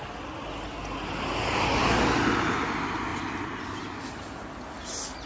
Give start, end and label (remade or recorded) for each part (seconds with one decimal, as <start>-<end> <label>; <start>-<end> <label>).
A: 0.0-1.8 recorded; 1.8-2.6 remade; 2.6-3.1 recorded; 3.1-4.1 remade; 4.1-5.3 recorded